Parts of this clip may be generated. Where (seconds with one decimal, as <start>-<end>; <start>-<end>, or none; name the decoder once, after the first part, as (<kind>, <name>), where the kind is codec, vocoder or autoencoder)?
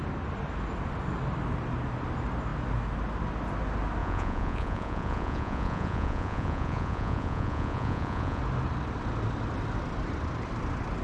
4.0-8.4 (vocoder, Vocos)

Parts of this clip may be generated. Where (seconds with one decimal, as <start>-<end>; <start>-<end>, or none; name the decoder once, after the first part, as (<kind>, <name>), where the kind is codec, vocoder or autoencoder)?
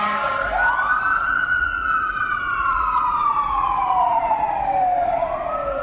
1.1-4.6 (vocoder, Vocos)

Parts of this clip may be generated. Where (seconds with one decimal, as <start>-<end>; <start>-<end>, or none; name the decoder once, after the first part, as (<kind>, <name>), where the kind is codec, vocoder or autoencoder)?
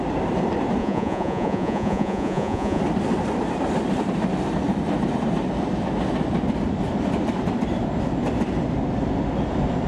0.8-2.8 (vocoder, Vocos)